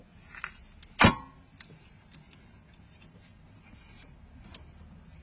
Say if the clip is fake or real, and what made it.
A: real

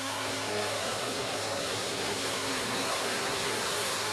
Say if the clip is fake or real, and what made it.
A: fake, codec, SNAC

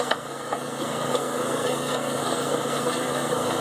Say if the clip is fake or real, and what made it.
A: fake, codec, SNAC